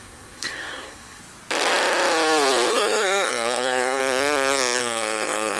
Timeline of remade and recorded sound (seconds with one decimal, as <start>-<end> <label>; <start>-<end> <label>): 0.0-1.2 remade; 1.2-2.7 recorded; 2.7-4.0 remade; 4.0-4.8 recorded; 4.8-5.6 remade